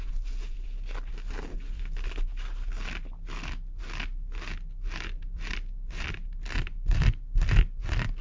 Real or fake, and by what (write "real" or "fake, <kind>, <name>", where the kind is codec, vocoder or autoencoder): real